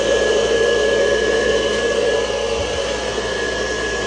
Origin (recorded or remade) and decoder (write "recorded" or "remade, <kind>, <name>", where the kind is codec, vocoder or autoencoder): recorded